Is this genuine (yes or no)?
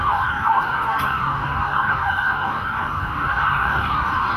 no